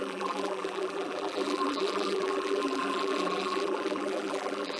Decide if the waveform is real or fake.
fake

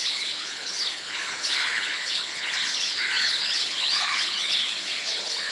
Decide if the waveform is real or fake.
fake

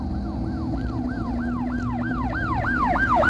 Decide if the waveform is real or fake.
real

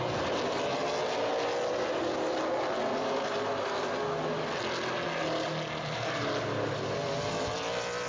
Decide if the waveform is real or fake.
real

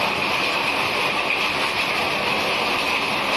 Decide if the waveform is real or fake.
real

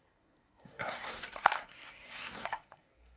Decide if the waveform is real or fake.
fake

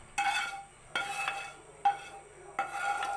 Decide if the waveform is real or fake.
real